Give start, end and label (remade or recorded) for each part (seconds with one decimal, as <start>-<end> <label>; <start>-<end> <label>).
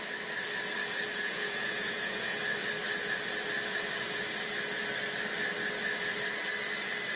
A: 0.0-1.1 recorded; 1.1-2.4 remade; 2.4-7.2 recorded